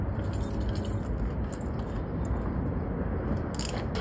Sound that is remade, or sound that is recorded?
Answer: recorded